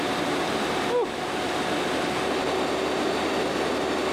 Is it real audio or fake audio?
real